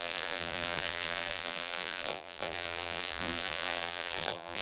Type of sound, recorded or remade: remade